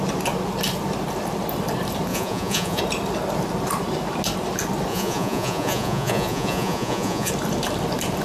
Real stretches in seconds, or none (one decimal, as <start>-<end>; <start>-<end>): 0.0-2.1; 2.8-4.9; 7.3-8.2